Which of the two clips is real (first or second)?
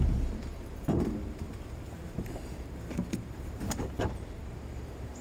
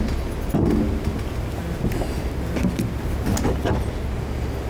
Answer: second